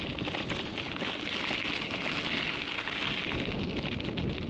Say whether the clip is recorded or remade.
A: recorded